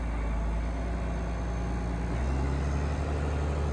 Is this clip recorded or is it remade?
recorded